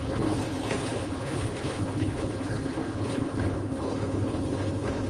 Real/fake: fake